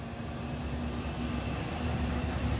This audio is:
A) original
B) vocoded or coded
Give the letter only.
A